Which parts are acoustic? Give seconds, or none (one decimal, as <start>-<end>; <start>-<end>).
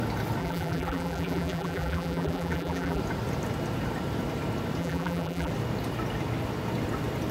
0.0-0.4; 3.0-4.8; 5.5-7.3